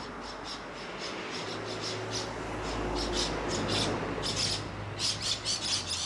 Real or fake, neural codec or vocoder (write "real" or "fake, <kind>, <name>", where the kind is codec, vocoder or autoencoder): real